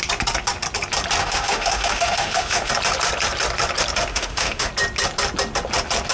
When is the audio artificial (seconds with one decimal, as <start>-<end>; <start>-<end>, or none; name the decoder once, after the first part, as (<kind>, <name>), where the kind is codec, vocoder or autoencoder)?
1.2-2.7 (autoencoder, DAC-VAE); 4.1-4.7